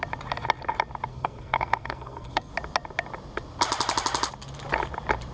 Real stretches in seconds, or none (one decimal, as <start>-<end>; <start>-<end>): 0.0-1.1; 2.5-5.3